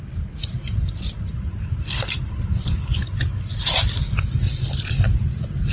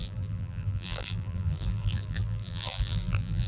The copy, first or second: second